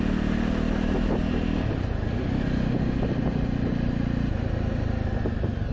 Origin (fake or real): real